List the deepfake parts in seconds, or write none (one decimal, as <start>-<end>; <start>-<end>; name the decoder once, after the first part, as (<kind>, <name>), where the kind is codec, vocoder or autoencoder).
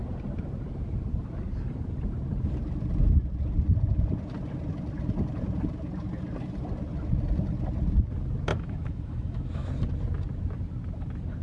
8.5-9.7 (autoencoder, DAC-VAE)